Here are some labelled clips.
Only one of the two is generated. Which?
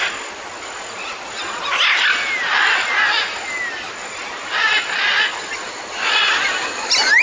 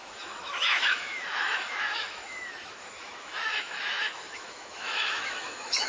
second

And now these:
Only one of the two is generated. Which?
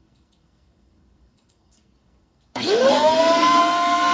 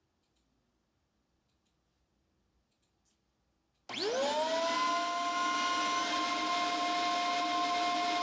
first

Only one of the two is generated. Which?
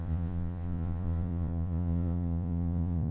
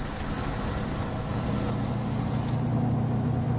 first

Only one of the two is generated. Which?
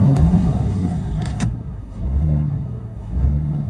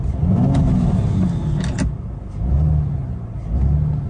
first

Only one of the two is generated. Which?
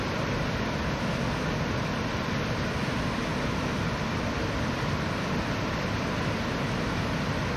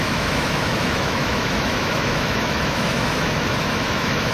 second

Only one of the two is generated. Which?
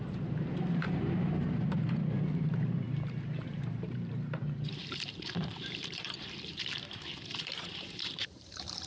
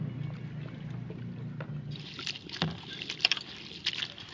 first